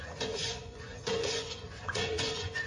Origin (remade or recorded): remade